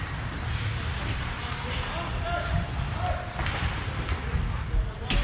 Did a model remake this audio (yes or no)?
no